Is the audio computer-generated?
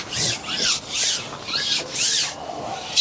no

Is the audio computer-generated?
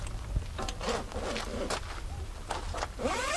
no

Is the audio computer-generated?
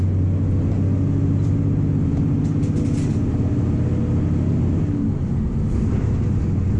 no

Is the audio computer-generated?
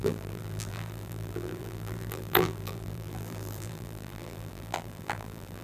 yes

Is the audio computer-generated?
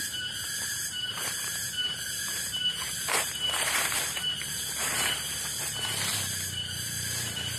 yes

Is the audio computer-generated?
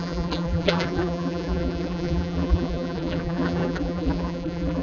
yes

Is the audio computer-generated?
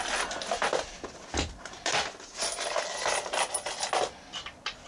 no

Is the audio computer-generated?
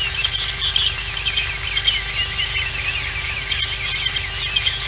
no